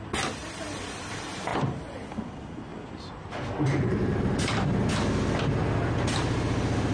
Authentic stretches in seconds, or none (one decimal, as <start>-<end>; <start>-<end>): 0.0-0.4; 1.1-1.5; 2.1-2.7; 4.9-6.9